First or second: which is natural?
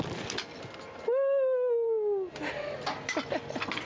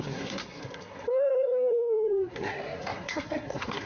first